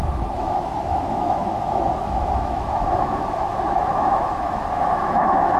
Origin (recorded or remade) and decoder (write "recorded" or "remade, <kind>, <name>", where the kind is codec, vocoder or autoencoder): remade, autoencoder, DAC-VAE